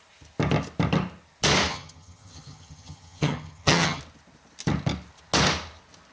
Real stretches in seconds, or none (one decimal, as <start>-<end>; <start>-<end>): 0.0-1.7; 4.0-6.1

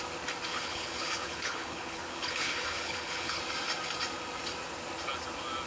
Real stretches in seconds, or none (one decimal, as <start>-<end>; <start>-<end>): 0.0-0.5; 3.4-5.7

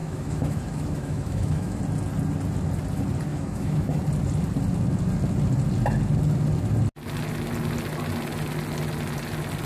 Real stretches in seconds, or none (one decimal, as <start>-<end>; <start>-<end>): 1.8-3.3; 4.0-9.7

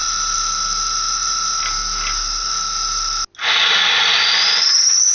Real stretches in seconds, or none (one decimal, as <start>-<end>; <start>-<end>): 0.5-5.1

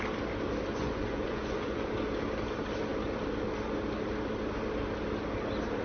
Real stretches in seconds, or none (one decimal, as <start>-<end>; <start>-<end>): 0.0-0.7; 1.9-5.8

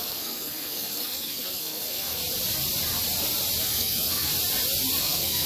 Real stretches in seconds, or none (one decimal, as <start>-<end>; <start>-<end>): 2.2-3.6; 4.3-5.0

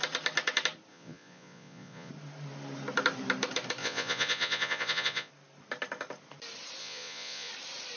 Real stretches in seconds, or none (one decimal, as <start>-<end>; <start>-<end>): 0.0-0.9; 2.1-3.8; 5.3-6.8; 7.5-8.0